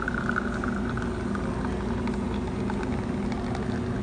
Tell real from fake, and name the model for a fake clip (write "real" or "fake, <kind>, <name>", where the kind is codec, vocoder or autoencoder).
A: real